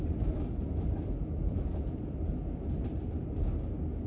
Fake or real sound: real